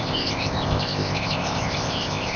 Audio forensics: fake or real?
fake